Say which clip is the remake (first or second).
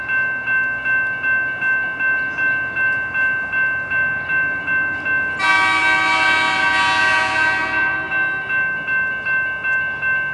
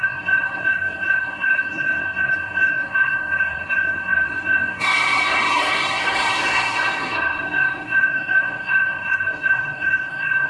second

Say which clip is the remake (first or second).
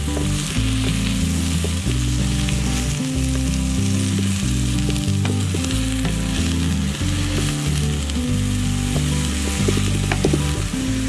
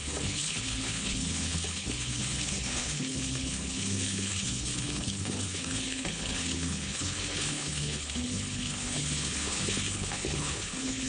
second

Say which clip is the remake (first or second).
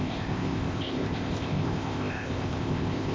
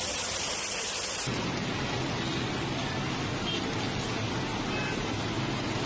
first